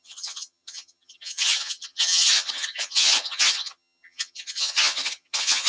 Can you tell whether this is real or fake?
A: fake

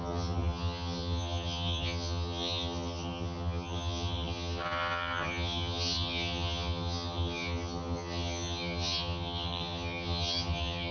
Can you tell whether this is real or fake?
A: fake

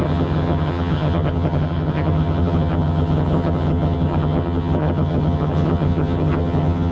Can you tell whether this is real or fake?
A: fake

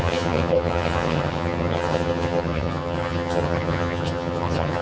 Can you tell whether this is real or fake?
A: fake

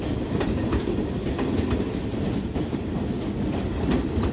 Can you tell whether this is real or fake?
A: real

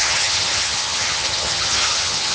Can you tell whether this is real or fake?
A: fake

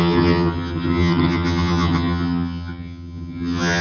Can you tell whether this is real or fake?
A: fake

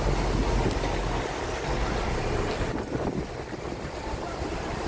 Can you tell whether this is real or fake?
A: real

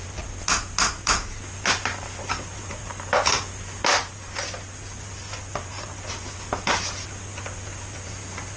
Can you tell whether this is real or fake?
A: real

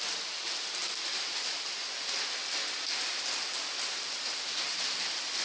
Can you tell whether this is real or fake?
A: real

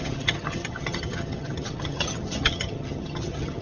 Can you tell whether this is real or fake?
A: fake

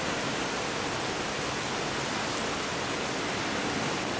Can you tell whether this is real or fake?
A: real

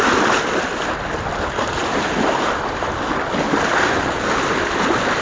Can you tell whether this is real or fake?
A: real